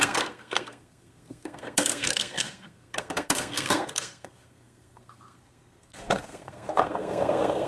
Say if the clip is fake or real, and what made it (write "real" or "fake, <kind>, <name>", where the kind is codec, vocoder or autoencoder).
fake, codec, SNAC